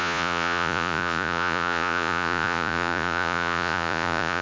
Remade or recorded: remade